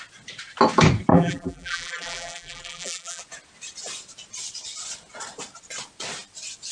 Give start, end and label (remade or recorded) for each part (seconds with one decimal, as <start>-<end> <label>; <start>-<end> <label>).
0.0-1.1 recorded; 1.1-3.2 remade; 3.2-6.7 recorded